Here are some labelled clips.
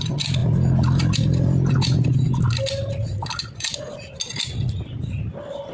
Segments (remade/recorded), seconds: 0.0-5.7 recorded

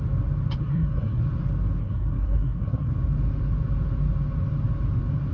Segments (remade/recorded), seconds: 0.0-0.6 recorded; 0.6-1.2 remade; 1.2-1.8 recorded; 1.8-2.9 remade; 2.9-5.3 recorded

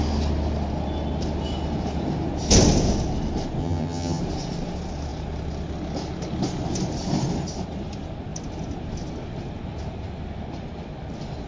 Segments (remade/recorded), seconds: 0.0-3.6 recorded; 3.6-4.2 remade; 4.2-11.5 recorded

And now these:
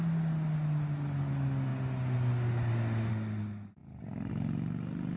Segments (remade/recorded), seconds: 0.0-5.2 recorded